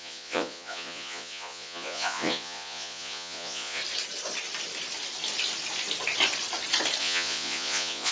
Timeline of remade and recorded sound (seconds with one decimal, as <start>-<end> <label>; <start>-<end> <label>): 0.0-3.8 remade; 3.8-7.0 recorded; 7.0-8.1 remade